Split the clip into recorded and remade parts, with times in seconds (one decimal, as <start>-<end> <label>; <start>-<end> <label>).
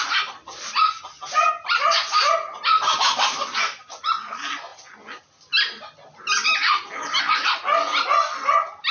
0.0-8.9 recorded